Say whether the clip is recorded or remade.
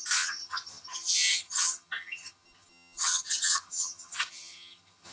remade